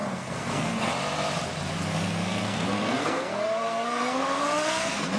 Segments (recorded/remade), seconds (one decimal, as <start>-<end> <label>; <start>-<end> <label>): 0.0-0.9 remade; 0.9-1.9 recorded; 1.9-5.2 remade

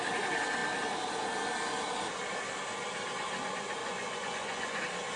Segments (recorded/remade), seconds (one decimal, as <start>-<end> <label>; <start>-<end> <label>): 0.0-3.8 recorded; 3.8-4.8 remade; 4.8-5.2 recorded

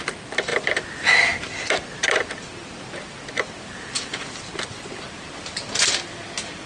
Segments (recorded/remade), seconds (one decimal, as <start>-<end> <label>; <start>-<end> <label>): 0.0-6.7 remade

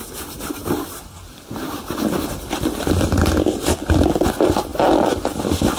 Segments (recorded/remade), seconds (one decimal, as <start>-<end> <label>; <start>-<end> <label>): 0.0-5.8 recorded